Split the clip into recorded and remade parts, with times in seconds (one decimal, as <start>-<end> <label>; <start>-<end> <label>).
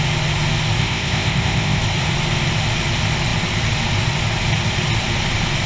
0.0-0.8 recorded; 0.8-1.8 remade; 1.8-5.7 recorded